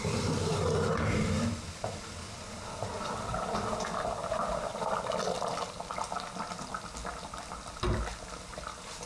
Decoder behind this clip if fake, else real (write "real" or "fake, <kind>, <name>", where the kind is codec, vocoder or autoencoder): real